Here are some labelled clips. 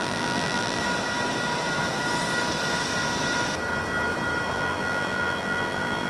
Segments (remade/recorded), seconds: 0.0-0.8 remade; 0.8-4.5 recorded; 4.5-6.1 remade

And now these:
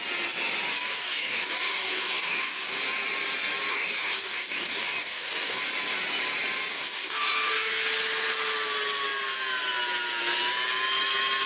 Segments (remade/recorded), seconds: 0.0-0.7 recorded; 0.7-2.8 remade; 2.8-3.7 recorded; 3.7-5.6 remade; 5.6-6.7 recorded; 6.7-7.8 remade; 7.8-11.5 recorded

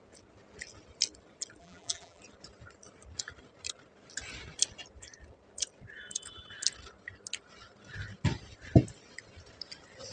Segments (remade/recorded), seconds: 0.0-1.6 recorded; 1.6-2.2 remade; 2.2-10.1 recorded

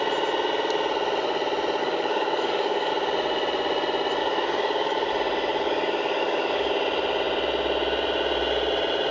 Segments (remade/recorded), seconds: 0.0-1.8 recorded; 1.8-2.9 remade; 2.9-4.2 recorded; 4.2-5.1 remade; 5.1-5.5 recorded; 5.5-6.7 remade; 6.7-9.1 recorded

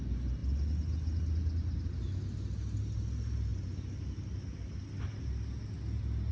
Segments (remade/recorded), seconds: 0.0-6.3 recorded